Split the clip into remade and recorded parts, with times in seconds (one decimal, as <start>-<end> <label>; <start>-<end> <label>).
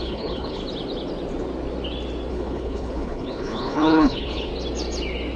0.0-0.6 remade; 0.6-2.3 recorded; 2.3-4.5 remade; 4.5-5.4 recorded